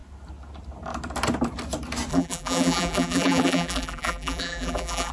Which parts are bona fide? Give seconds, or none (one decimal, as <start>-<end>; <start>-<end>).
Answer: 0.0-2.1